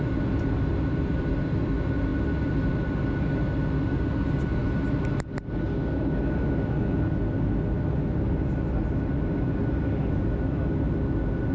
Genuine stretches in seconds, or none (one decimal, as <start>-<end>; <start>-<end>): 0.0-11.5